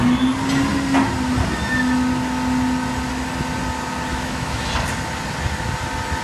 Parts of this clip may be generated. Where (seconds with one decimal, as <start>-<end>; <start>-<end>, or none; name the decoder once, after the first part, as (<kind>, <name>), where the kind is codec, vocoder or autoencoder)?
4.1-4.7 (autoencoder, DAC-VAE)